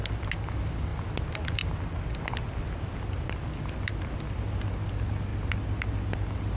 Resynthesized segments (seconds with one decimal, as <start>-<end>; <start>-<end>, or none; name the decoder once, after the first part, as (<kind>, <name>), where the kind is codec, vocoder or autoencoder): none